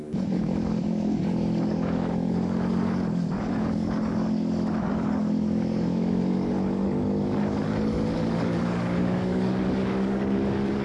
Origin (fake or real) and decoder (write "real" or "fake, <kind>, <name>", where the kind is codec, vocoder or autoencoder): fake, codec, DAC